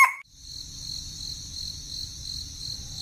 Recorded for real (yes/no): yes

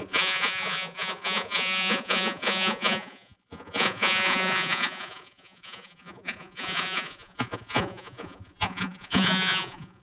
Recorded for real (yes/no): no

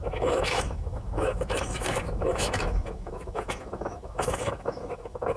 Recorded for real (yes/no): no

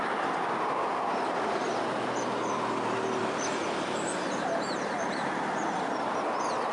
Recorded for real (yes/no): yes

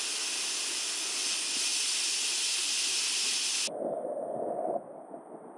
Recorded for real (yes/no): yes